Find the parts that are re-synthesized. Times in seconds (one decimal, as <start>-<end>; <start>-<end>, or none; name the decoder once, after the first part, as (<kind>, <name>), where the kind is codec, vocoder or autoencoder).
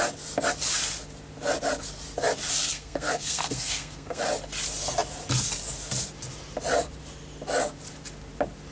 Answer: 2.6-4.2 (codec, SNAC)